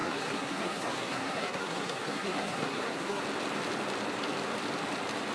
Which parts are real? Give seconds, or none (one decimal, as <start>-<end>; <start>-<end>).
3.2-5.3